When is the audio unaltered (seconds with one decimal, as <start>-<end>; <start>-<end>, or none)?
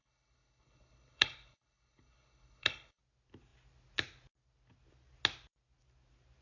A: 3.0-6.4